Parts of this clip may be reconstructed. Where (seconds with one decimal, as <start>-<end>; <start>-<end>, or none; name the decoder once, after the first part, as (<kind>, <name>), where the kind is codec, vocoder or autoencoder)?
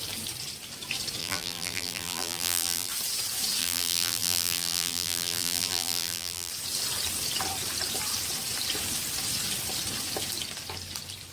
1.2-2.9 (vocoder, BigVGAN v2); 3.6-6.5